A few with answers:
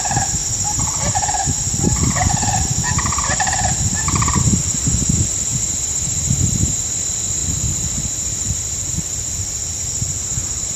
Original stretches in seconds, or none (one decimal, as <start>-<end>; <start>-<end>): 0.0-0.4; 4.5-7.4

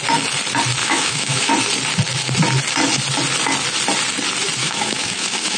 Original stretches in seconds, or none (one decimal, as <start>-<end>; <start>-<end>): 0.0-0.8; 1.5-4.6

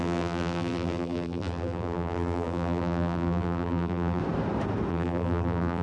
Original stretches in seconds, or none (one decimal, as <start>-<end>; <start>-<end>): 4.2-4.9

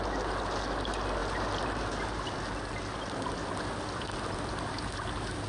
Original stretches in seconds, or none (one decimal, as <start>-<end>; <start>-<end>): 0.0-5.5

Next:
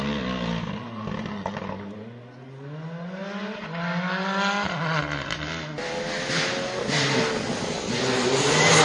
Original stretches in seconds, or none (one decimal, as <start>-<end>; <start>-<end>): 0.0-8.8